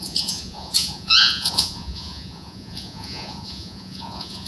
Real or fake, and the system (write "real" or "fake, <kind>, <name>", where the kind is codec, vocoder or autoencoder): fake, vocoder, Vocos